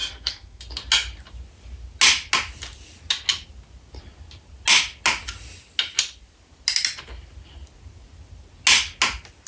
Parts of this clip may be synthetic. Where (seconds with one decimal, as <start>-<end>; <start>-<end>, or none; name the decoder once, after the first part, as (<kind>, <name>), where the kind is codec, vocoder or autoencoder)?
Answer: 0.0-0.6 (codec, SNAC)